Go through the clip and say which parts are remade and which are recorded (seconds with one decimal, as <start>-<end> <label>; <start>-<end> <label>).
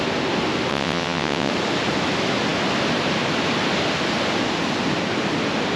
0.0-0.7 recorded; 0.7-1.5 remade; 1.5-5.8 recorded